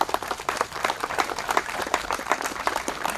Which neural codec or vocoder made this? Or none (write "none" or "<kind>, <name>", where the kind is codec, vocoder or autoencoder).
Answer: vocoder, BigVGAN v2